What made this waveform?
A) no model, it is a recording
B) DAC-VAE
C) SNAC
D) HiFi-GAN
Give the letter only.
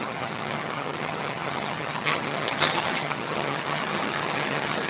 D